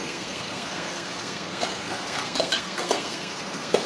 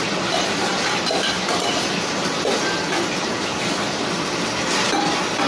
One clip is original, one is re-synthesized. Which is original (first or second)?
second